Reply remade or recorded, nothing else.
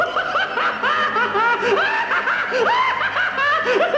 recorded